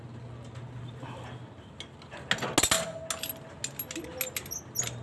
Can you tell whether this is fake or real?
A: real